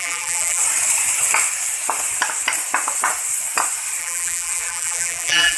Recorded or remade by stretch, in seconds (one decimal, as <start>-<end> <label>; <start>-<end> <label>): 0.0-0.6 remade; 0.6-4.0 recorded; 4.0-5.6 remade